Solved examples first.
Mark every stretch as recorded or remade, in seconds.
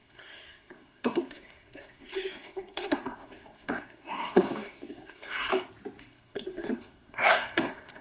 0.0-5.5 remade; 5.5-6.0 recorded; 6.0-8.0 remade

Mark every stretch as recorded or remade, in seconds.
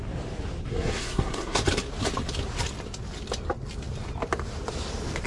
0.0-0.7 recorded; 0.7-1.6 remade; 1.6-5.3 recorded